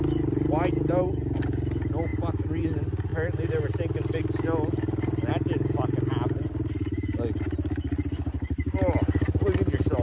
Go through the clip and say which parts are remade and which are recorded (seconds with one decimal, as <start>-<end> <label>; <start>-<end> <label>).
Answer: 0.0-10.0 recorded